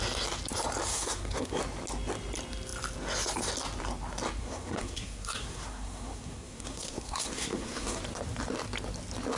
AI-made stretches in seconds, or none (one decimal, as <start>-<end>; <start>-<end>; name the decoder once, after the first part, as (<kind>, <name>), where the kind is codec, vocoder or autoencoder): 0.9-1.6 (codec, SNAC); 4.4-8.0